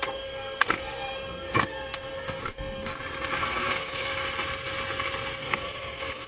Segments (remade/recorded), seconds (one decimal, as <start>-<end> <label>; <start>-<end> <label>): 0.0-2.9 remade; 2.9-3.4 recorded; 3.4-4.1 remade; 4.1-5.4 recorded; 5.4-6.3 remade

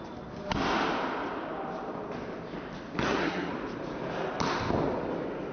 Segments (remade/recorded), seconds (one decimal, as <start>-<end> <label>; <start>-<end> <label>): 0.0-3.0 recorded; 3.0-3.5 remade; 3.5-5.5 recorded

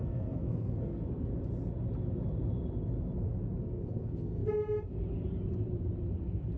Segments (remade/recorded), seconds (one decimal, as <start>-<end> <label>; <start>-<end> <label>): 0.0-1.3 remade; 1.3-3.6 recorded; 3.6-4.4 remade; 4.4-6.6 recorded

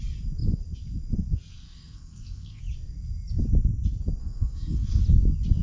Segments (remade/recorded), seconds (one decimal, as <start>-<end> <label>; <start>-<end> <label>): 0.0-1.5 recorded; 1.5-2.6 remade; 2.6-4.2 recorded; 4.2-5.0 remade; 5.0-5.6 recorded